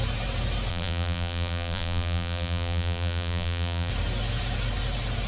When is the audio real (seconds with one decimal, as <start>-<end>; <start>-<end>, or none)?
0.0-0.7; 3.9-5.3

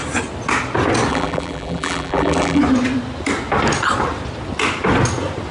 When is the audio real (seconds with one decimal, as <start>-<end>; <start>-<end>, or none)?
0.0-1.1; 2.6-5.5